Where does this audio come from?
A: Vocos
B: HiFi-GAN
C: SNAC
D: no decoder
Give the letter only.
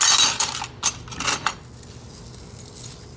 D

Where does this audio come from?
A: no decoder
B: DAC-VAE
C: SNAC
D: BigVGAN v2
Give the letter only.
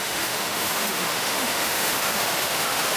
B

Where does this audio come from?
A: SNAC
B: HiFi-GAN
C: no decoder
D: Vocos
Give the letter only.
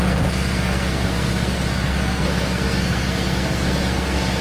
A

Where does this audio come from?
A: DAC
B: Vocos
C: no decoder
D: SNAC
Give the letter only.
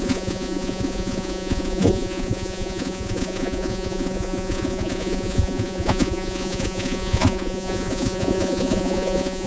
B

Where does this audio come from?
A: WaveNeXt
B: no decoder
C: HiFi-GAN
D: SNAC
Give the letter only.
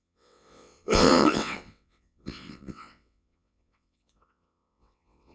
A